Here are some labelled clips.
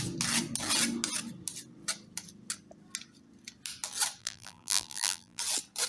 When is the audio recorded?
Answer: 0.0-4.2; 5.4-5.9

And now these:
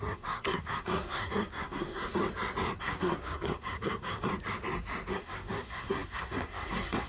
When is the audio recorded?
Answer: 2.2-2.8; 4.3-5.1

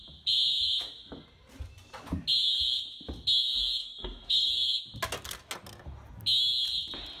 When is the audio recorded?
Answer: 0.0-3.8; 4.5-7.2

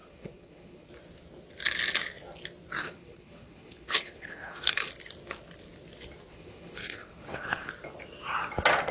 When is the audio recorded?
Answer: 0.9-2.8; 4.9-6.3; 7.7-8.9

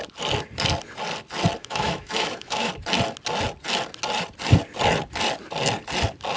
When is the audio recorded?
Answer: 0.0-1.6; 2.7-6.4